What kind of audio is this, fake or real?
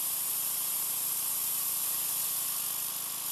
fake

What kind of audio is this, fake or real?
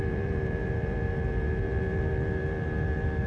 fake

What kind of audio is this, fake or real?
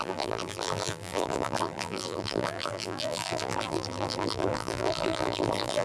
fake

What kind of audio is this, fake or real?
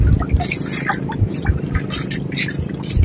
real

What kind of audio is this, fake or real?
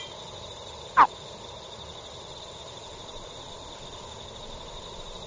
real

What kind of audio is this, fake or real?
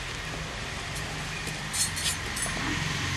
real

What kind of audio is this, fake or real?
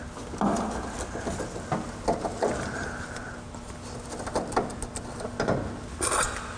real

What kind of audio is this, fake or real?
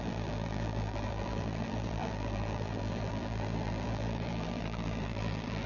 fake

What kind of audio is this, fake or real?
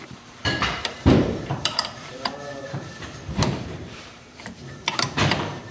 fake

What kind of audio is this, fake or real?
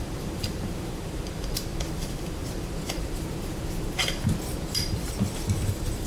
fake